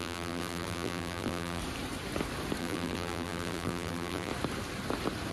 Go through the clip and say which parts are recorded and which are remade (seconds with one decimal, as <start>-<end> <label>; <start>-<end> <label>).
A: 0.0-1.6 remade; 1.6-2.6 recorded; 2.6-4.3 remade; 4.3-5.3 recorded